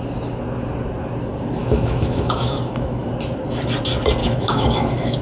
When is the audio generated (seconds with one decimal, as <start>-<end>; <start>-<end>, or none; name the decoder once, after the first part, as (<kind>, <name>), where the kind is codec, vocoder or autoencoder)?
1.6-3.1 (autoencoder, DAC-VAE); 4.2-5.2